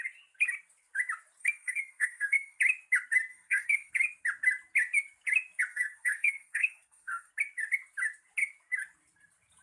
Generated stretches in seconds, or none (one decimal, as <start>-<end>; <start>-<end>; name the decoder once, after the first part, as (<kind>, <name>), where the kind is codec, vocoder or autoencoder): 1.4-2.6 (codec, SNAC); 3.3-3.9; 5.7-7.3